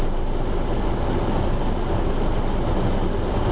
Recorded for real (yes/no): yes